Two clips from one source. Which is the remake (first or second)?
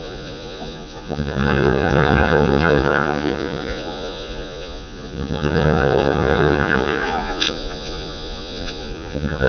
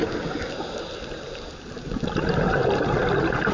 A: first